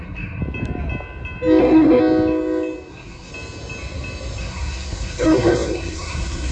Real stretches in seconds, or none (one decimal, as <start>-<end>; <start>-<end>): 0.4-1.6; 2.0-2.9; 3.3-4.4